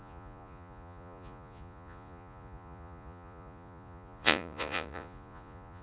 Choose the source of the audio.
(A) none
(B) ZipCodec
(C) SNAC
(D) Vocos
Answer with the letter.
D